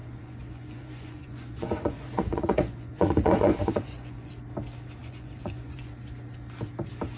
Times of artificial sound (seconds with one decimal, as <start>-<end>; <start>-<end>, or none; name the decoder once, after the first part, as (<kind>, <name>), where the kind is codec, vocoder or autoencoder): 0.0-4.3 (vocoder, Vocos); 5.0-5.9

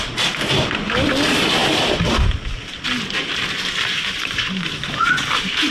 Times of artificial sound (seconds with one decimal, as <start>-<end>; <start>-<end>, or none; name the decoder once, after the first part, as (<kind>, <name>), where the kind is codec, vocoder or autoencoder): none

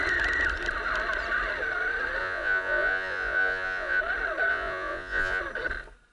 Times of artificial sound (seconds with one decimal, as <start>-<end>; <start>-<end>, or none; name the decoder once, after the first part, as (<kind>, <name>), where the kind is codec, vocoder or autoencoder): 2.2-4.0 (vocoder, Vocos); 4.5-5.4

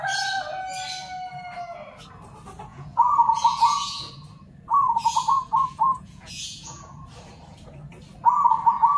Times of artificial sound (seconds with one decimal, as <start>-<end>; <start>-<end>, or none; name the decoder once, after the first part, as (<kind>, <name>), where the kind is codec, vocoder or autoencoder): 2.7-4.1 (vocoder, Vocos); 4.8-7.0

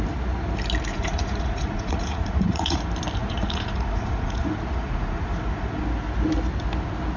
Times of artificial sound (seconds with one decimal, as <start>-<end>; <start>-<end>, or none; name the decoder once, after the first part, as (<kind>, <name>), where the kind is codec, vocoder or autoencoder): 0.9-2.8 (vocoder, Vocos); 3.2-5.8

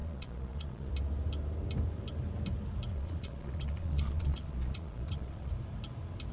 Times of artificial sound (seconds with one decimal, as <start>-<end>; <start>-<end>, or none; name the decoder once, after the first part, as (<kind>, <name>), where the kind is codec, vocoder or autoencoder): 0.0-0.9 (vocoder, Vocos); 2.9-5.5

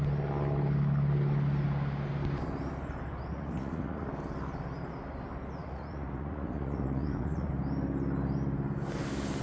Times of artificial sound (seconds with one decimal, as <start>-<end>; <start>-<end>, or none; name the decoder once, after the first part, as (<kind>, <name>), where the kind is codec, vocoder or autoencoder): 3.3-4.1 (vocoder, Vocos); 5.6-7.5